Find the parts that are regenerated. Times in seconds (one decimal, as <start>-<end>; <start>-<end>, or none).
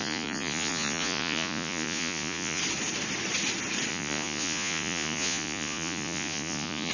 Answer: 0.0-2.6; 3.9-6.9